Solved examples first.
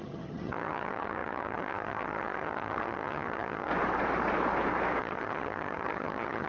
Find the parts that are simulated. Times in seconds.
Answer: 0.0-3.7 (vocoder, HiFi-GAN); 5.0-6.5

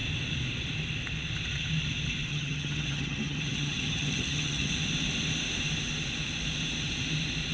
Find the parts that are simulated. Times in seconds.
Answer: 2.3-4.7 (vocoder, HiFi-GAN)

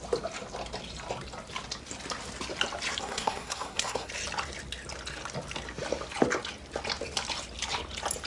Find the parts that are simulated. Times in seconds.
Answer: 3.0-4.1 (codec, SNAC)